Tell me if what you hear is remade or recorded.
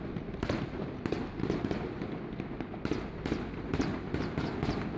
recorded